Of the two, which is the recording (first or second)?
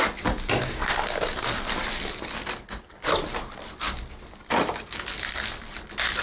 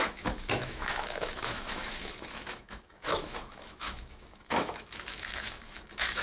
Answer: first